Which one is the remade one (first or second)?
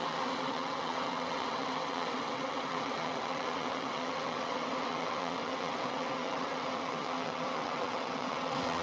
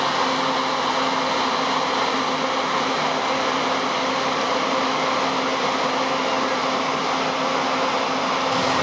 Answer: first